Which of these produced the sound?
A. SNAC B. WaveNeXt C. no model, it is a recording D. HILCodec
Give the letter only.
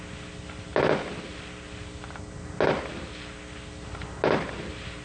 C